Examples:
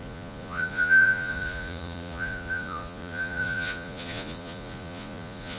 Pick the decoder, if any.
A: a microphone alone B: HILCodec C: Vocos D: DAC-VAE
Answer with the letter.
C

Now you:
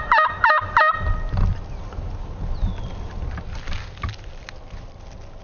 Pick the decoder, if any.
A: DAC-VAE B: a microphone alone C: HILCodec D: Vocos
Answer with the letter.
B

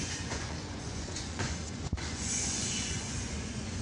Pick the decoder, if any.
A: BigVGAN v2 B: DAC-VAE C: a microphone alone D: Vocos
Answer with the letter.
D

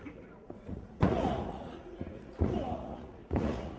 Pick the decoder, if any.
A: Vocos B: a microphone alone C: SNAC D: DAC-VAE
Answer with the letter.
A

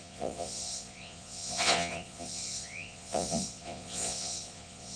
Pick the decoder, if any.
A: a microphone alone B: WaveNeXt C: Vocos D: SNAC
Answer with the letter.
C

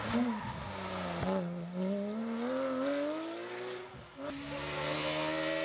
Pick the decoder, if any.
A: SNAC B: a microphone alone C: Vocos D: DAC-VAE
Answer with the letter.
B